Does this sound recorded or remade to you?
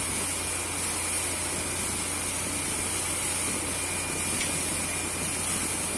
recorded